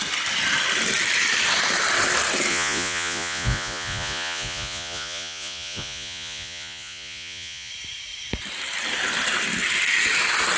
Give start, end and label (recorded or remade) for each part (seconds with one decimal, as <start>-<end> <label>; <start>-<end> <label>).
0.0-2.5 recorded; 2.5-7.7 remade; 7.7-10.6 recorded